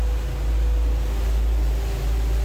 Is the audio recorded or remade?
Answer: recorded